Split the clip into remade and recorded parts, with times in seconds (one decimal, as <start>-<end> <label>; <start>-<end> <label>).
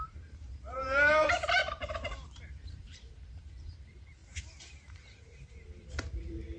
0.0-1.6 remade; 1.6-2.2 recorded; 2.2-6.6 remade